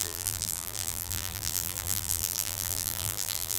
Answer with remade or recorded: remade